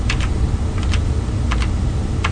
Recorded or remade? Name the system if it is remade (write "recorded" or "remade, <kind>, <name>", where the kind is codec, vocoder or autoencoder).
recorded